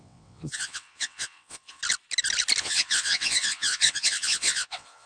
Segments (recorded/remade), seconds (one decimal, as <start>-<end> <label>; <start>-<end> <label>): 0.0-1.8 remade; 1.8-2.6 recorded; 2.6-5.1 remade

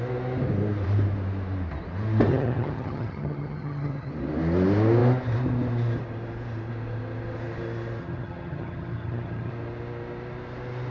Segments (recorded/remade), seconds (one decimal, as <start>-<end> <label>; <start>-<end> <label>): 0.0-2.3 recorded; 2.3-4.1 remade; 4.1-8.0 recorded; 8.0-9.5 remade; 9.5-10.9 recorded

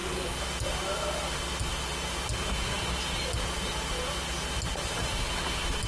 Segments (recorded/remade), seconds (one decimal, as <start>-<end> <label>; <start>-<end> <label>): 0.0-5.9 recorded

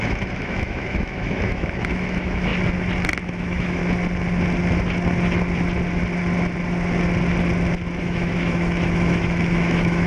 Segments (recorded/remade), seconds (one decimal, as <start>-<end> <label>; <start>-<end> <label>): 0.0-2.5 remade; 2.5-3.2 recorded; 3.2-3.8 remade; 3.8-8.0 recorded; 8.0-10.1 remade